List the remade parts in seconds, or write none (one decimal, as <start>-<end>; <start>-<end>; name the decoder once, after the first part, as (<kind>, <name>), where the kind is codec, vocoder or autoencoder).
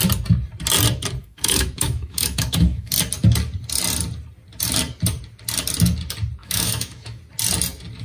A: 1.2-2.9 (autoencoder, DAC-VAE); 6.4-7.2